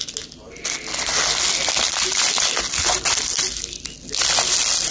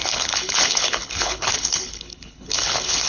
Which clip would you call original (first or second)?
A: first